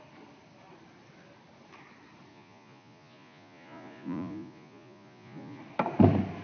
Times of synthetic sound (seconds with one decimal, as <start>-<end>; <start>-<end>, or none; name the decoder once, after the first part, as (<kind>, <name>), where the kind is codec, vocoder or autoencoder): 2.3-5.6 (vocoder, Vocos)